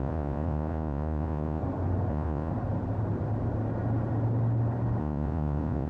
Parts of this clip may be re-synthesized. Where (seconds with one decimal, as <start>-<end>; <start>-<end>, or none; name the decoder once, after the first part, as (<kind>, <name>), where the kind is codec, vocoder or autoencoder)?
0.0-1.6 (vocoder, Vocos); 2.1-2.5; 5.0-5.9